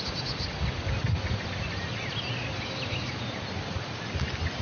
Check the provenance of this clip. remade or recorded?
recorded